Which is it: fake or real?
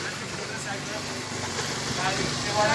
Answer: real